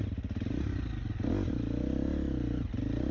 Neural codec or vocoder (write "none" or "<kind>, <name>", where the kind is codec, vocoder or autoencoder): none